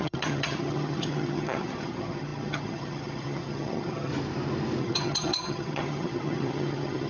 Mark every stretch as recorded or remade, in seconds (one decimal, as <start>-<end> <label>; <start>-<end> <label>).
0.0-4.1 remade; 4.1-4.8 recorded; 4.8-7.1 remade